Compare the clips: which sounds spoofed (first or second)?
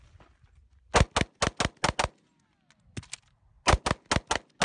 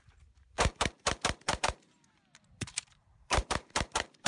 second